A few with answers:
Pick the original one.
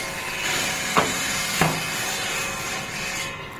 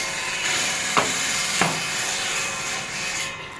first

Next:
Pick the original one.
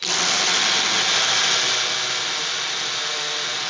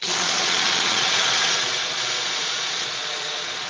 first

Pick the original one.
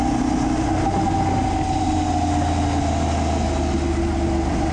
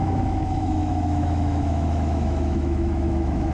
first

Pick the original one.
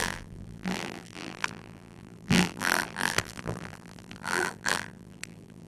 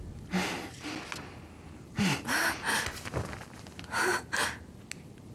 second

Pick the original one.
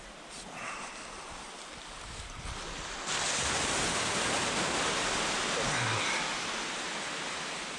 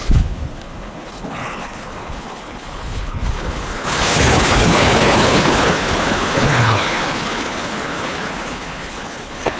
first